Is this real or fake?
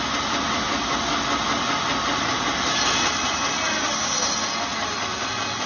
real